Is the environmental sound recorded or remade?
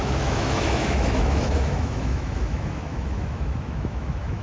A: remade